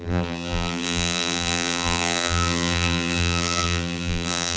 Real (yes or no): no